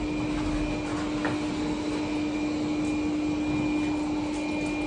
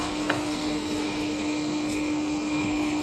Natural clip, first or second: first